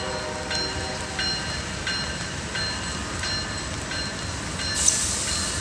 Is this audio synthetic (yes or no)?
no